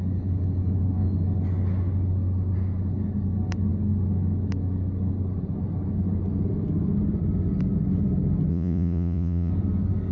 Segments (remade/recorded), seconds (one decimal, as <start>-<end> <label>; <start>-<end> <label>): 0.0-8.5 recorded; 8.5-9.5 remade; 9.5-10.1 recorded